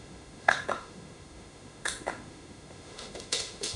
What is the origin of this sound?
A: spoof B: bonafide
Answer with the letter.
A